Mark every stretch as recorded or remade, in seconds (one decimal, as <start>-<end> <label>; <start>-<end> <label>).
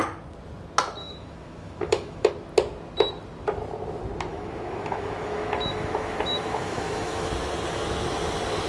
0.0-1.0 recorded; 1.0-2.3 remade; 2.3-4.3 recorded; 4.3-7.3 remade; 7.3-8.7 recorded